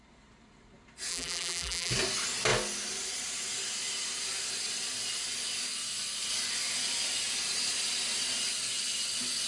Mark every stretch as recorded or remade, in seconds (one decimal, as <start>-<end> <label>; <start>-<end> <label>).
0.0-1.1 recorded; 1.1-1.9 remade; 1.9-9.5 recorded